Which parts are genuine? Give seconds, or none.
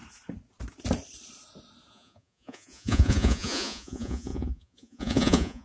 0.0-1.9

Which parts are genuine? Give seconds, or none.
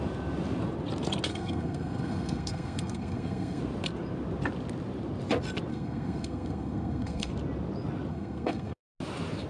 0.0-1.3; 3.6-5.7; 7.3-8.1; 8.8-9.5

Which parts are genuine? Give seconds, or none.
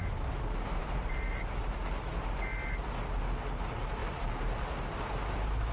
0.0-0.8; 1.3-4.0; 4.6-5.7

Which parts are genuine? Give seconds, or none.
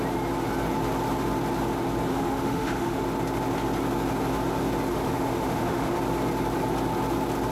0.0-2.1; 3.0-4.9; 6.0-7.5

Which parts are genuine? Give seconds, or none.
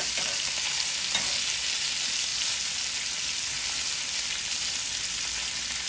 0.0-5.9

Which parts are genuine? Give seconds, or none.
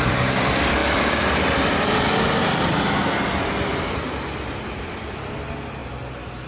0.0-0.8; 2.7-3.7; 5.3-5.8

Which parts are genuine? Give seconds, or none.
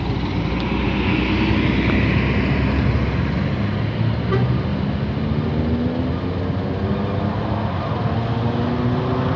0.0-9.4